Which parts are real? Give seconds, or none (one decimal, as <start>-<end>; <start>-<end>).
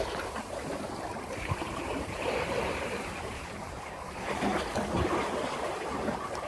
4.5-5.1